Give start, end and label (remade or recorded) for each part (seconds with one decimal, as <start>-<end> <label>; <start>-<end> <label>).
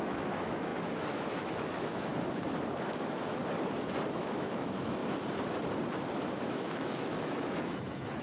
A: 0.0-2.1 remade; 2.1-2.9 recorded; 2.9-3.4 remade; 3.4-4.1 recorded; 4.1-5.0 remade; 5.0-6.5 recorded; 6.5-8.2 remade